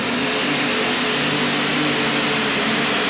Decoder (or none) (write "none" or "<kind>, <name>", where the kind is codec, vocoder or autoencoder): none